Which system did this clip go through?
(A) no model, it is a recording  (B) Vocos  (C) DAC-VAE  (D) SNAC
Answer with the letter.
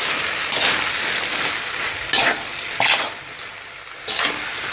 A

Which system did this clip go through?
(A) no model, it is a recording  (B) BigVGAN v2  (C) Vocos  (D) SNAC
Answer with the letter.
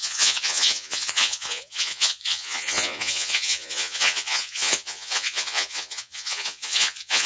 C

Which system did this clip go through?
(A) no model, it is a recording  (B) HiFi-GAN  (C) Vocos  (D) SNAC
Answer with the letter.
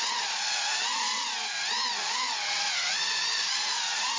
C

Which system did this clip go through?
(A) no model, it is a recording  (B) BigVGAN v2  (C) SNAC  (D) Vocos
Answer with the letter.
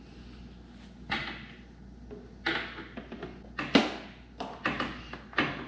A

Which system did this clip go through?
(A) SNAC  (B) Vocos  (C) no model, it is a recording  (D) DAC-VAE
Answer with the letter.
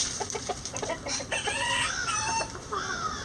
C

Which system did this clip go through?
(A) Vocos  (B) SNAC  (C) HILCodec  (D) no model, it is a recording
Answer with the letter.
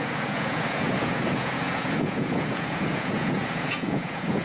A